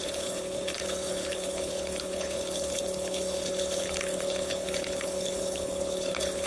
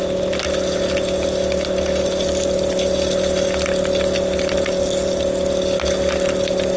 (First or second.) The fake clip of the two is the first